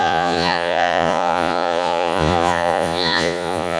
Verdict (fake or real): fake